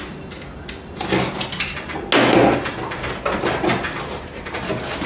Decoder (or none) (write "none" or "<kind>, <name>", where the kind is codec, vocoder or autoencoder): none